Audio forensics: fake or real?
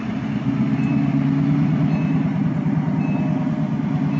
real